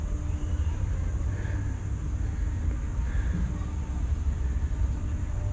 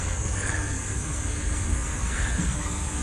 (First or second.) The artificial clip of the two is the second